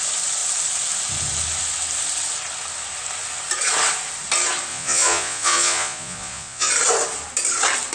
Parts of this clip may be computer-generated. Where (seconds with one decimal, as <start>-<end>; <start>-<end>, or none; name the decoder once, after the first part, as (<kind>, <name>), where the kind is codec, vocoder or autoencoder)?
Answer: 4.7-6.7 (vocoder, Vocos)

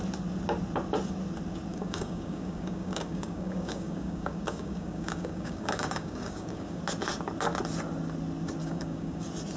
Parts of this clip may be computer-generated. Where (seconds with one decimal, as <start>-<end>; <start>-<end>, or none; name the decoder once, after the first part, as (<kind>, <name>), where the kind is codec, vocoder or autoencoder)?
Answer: 1.7-6.8 (codec, DAC); 8.6-9.2

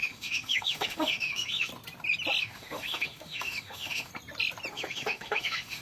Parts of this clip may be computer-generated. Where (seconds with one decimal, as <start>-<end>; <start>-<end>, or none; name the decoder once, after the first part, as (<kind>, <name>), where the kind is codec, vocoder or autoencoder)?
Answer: 0.0-1.7 (autoencoder, DAC-VAE); 2.4-4.1; 4.7-5.8

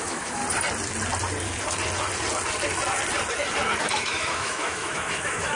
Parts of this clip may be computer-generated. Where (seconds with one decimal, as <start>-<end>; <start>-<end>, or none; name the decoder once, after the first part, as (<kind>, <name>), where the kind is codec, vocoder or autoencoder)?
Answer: 0.0-0.4 (autoencoder, DAC-VAE); 3.8-5.6

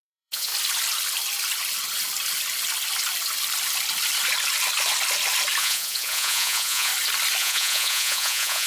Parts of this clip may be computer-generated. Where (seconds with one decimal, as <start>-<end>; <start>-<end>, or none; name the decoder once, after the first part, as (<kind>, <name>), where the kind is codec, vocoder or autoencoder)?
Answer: 0.0-0.5 (vocoder, Vocos); 5.6-6.9; 7.4-8.7

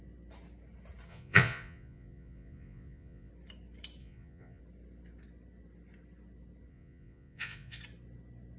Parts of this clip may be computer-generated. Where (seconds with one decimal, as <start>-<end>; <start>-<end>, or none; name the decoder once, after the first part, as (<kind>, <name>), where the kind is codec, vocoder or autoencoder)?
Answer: 1.1-3.3 (vocoder, Vocos); 4.0-4.6; 6.7-7.8